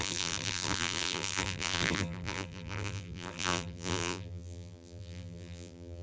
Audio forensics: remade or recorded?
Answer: remade